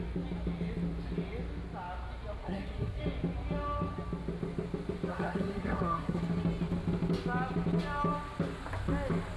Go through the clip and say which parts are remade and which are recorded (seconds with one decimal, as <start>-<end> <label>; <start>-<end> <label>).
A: 0.0-2.4 recorded; 2.4-3.0 remade; 3.0-5.1 recorded; 5.1-6.2 remade; 6.2-9.4 recorded